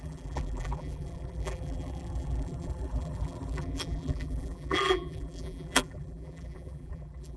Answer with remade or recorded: remade